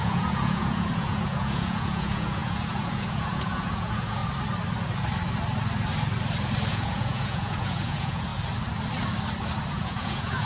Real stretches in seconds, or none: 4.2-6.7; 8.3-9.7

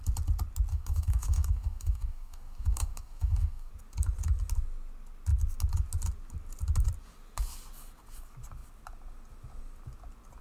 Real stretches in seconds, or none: 0.0-0.7; 3.7-10.4

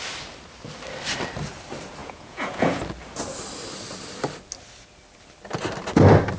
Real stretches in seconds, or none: 0.0-2.0; 2.8-6.4

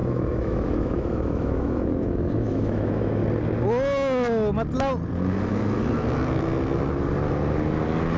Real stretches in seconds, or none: 3.2-8.2

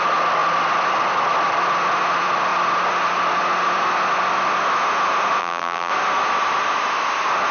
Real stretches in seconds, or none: 0.0-5.4; 5.9-7.5

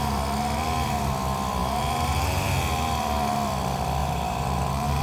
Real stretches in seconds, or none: 0.0-1.6; 2.5-4.0

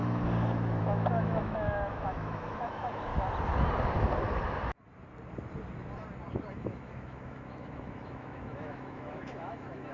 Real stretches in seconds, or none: 0.0-0.8; 3.1-6.5